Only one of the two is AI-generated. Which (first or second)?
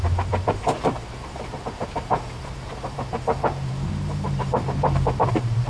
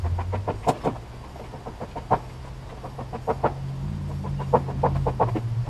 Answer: first